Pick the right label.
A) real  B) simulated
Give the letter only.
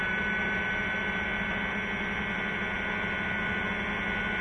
A